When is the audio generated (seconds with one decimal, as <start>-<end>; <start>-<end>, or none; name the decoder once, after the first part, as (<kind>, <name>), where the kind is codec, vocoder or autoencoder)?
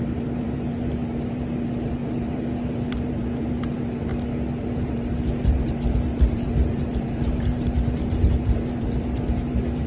0.0-4.1 (vocoder, BigVGAN v2); 4.6-9.9